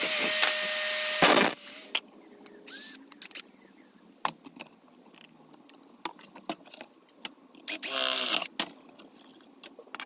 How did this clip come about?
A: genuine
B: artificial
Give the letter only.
A